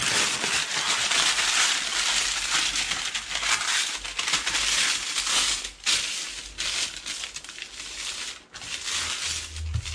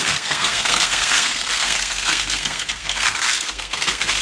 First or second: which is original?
first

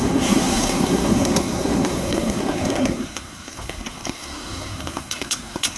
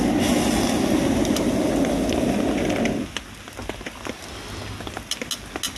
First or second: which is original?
second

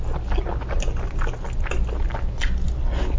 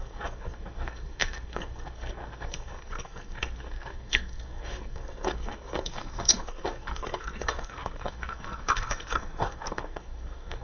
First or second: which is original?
first